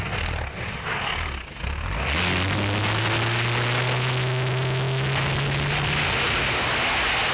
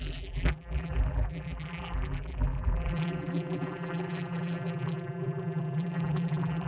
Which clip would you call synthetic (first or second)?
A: second